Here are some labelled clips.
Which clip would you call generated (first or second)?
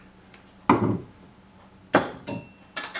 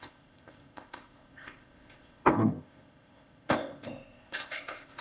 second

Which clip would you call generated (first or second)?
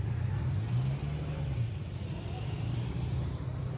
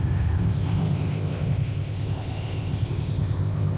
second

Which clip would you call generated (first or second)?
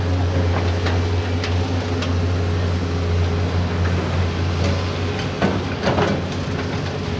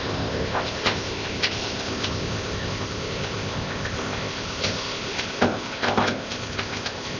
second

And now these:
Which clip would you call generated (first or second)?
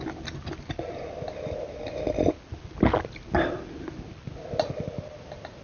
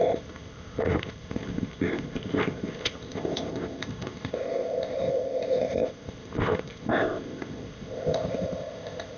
second